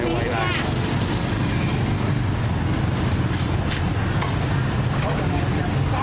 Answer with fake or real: real